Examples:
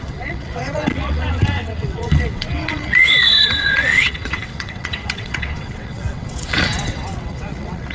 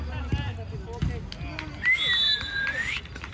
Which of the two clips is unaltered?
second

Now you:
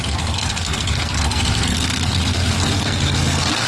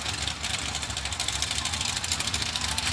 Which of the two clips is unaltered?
second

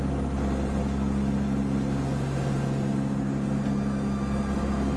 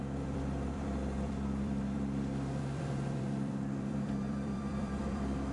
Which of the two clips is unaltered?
first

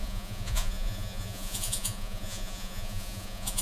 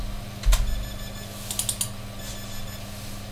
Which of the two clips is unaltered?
second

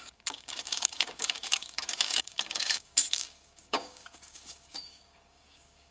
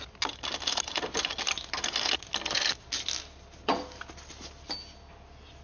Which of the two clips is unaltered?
second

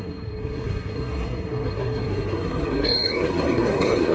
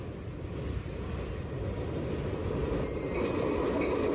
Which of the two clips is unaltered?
second